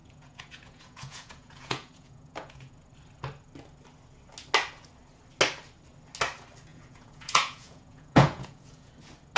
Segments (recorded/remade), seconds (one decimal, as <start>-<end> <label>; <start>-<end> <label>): 0.0-2.7 remade; 2.7-6.7 recorded; 6.7-8.9 remade; 8.9-9.4 recorded